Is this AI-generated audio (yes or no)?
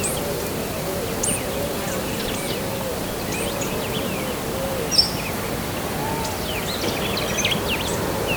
no